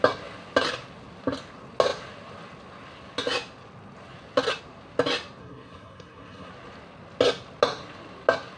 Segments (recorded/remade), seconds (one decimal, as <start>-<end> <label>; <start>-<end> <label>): 0.0-5.4 recorded; 5.4-6.5 remade; 6.5-8.6 recorded